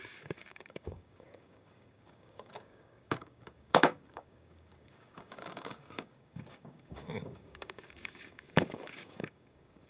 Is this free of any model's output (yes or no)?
no